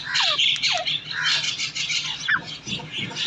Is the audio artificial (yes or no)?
no